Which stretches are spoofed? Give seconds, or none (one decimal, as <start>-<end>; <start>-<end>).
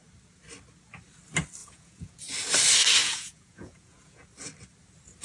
1.6-2.2; 3.0-4.3